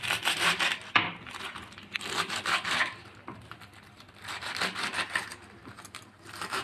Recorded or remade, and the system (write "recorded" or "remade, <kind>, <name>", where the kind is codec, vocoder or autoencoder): recorded